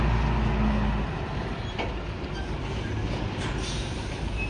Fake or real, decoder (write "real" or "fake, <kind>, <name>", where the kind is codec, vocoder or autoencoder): real